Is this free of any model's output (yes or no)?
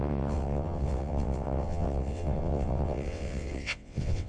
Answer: no